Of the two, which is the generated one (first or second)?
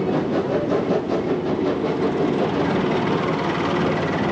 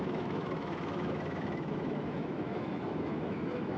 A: second